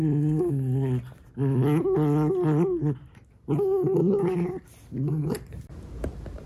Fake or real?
real